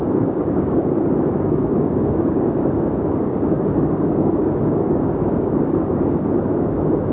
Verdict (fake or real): fake